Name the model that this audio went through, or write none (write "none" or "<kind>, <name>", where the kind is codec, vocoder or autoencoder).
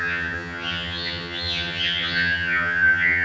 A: vocoder, HiFi-GAN